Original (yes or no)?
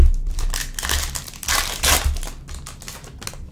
yes